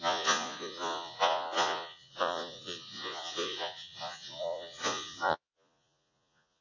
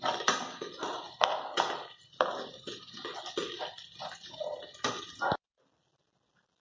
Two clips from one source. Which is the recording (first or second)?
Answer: second